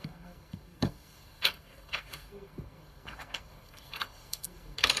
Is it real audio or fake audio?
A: fake